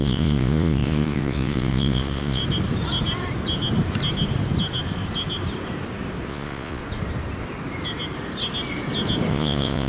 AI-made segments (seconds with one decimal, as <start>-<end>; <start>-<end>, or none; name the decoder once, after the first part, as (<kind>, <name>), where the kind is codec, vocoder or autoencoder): 0.0-2.4 (vocoder, Vocos); 6.3-6.8; 9.3-9.9